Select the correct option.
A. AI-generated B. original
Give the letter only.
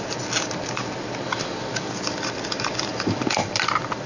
B